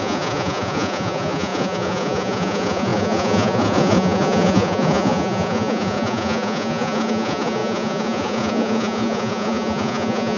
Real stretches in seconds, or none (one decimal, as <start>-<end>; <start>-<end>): none